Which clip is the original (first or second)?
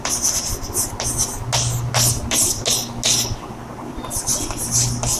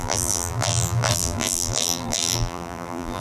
first